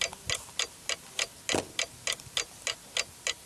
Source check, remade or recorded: recorded